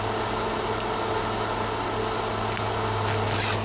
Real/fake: real